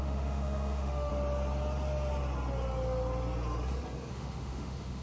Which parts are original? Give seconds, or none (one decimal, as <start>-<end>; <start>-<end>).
1.1-4.1